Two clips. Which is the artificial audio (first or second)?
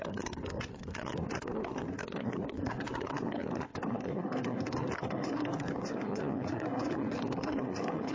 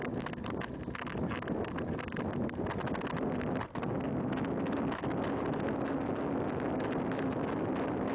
first